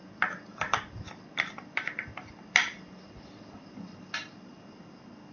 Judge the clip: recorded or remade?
recorded